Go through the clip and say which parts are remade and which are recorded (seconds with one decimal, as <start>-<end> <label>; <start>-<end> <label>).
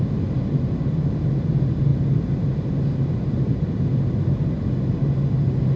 0.0-1.9 recorded; 1.9-3.8 remade; 3.8-5.8 recorded